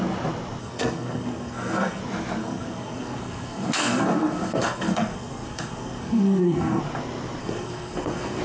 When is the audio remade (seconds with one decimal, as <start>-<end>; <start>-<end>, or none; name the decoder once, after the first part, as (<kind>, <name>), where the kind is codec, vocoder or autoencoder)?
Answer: 0.6-2.0 (codec, SNAC); 2.4-6.8; 7.4-8.4